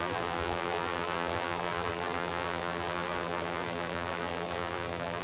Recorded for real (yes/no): no